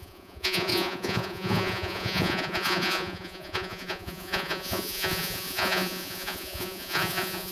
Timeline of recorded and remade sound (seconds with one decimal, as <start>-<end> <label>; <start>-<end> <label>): 0.0-7.5 remade